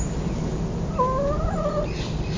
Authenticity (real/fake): real